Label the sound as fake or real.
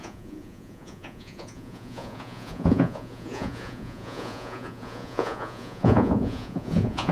fake